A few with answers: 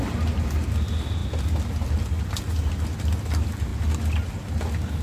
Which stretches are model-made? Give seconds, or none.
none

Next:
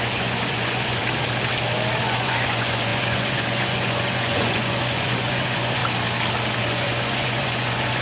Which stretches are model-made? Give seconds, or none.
0.0-1.0 (vocoder, Vocos); 2.0-5.8; 6.6-8.0

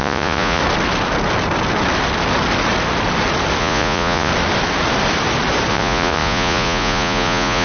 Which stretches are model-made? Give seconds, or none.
0.0-0.6 (vocoder, Vocos); 3.6-4.3; 5.7-7.6

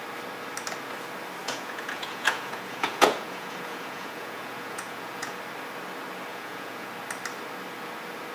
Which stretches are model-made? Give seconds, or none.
1.4-5.4 (vocoder, Vocos); 6.3-6.9